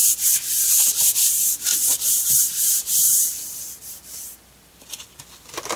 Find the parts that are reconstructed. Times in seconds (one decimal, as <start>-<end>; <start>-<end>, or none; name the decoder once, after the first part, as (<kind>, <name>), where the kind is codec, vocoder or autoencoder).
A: 0.0-0.6 (vocoder, BigVGAN v2); 1.7-5.2